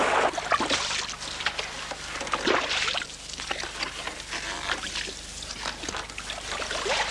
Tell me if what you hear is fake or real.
real